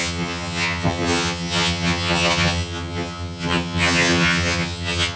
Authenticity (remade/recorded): remade